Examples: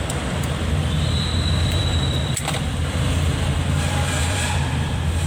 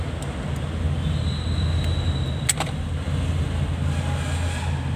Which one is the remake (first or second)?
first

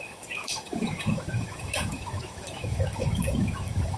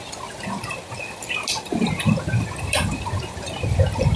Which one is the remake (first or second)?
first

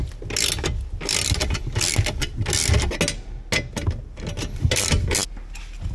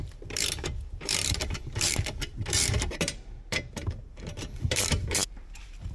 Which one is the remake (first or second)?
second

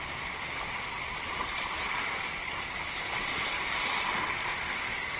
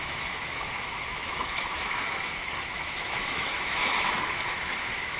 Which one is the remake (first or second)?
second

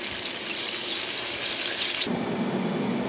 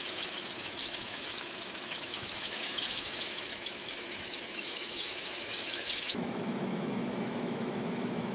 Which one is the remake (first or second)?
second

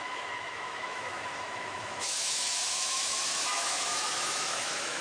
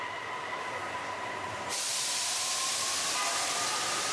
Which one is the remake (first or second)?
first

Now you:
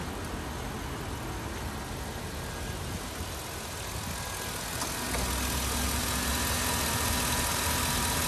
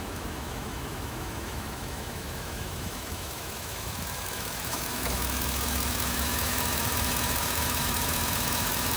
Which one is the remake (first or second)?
second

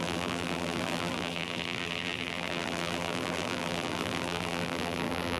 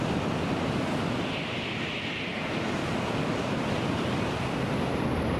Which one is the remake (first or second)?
first